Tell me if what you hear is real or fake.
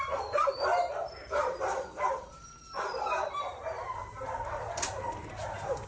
fake